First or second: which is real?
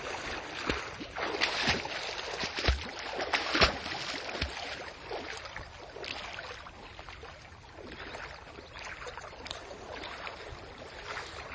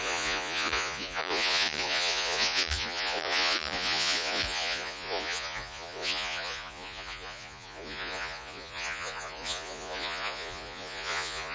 first